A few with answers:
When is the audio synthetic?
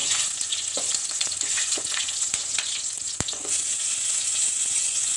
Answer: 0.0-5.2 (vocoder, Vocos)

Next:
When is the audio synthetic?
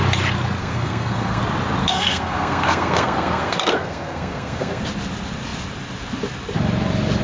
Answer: 0.6-1.4 (codec, SNAC); 1.8-4.8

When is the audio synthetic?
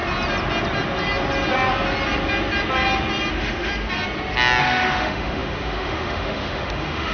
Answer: 3.3-3.7 (autoencoder, DAC-VAE); 4.6-7.1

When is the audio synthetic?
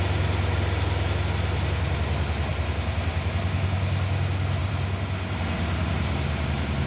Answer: 2.5-3.3 (vocoder, BigVGAN v2); 4.6-5.6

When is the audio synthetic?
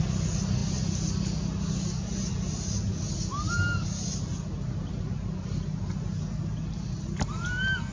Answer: none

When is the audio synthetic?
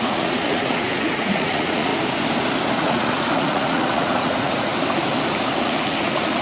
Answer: 0.0-1.9 (vocoder, Vocos); 2.7-4.7; 5.6-6.4